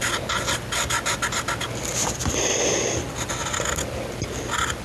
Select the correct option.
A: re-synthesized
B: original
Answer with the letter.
B